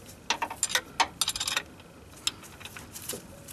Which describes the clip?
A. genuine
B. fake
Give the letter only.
A